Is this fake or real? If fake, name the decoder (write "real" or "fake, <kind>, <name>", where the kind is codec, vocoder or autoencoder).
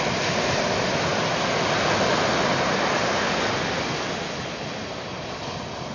real